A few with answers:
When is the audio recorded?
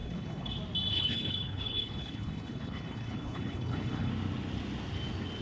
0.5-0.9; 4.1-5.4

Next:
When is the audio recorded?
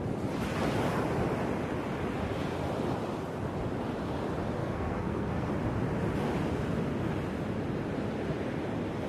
0.0-4.6; 5.5-9.1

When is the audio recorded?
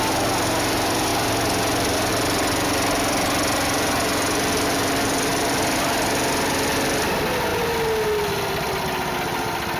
0.0-9.8